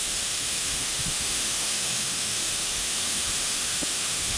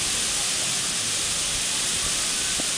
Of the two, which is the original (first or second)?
second